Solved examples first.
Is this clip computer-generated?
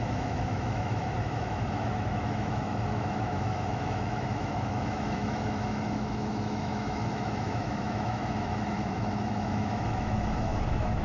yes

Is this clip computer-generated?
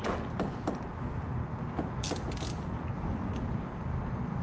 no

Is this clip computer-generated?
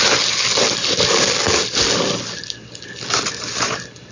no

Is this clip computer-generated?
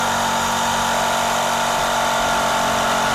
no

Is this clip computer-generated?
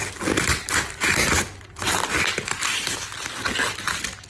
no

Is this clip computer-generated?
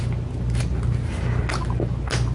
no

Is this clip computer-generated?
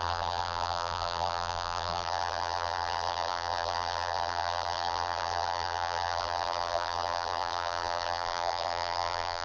yes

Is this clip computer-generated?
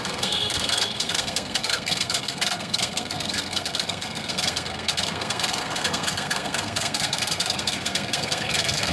yes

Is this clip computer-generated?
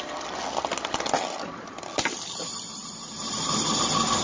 no